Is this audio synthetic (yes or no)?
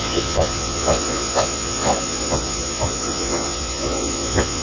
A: yes